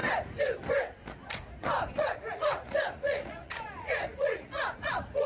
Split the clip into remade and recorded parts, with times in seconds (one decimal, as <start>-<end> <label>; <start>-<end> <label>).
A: 0.0-2.0 recorded; 2.0-5.3 remade